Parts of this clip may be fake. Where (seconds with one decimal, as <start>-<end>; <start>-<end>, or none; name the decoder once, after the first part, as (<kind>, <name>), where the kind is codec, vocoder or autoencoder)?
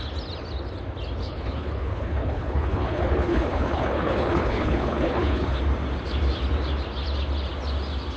1.2-5.6 (codec, HILCodec)